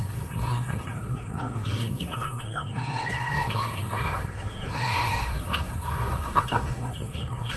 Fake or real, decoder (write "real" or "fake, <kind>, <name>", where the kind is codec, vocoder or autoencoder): fake, codec, SNAC